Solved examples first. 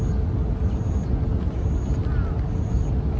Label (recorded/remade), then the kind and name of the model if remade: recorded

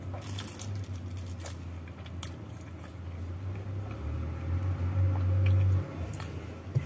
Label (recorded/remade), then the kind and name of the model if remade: recorded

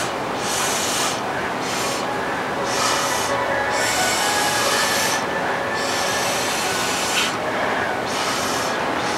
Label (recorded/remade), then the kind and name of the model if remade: recorded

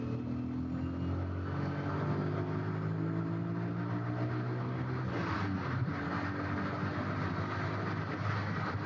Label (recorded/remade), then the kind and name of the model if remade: recorded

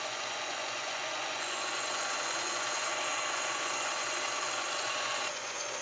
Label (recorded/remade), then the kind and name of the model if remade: remade, vocoder, Vocos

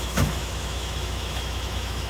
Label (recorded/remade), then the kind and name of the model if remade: remade, autoencoder, DAC-VAE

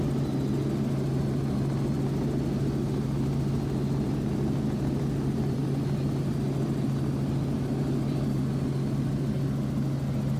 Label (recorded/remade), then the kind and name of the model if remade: recorded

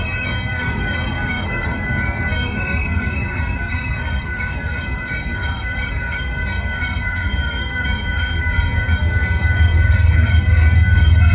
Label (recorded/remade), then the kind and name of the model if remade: remade, codec, SNAC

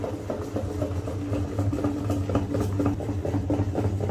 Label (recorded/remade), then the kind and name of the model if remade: recorded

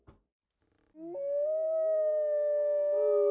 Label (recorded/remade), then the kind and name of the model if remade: recorded